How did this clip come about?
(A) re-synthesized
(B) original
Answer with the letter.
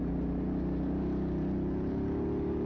B